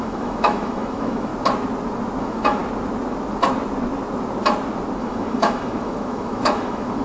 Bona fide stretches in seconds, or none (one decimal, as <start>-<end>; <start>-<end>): 1.3-2.2; 2.6-5.0